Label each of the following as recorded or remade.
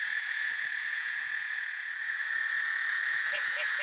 remade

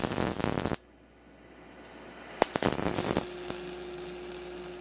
recorded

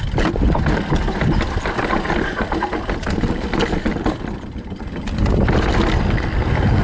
recorded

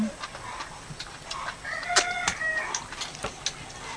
recorded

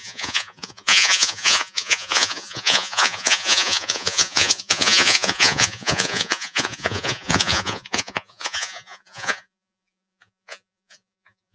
remade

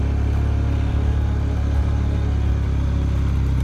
recorded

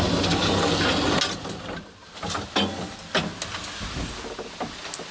recorded